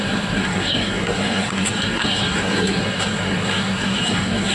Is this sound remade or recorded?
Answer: remade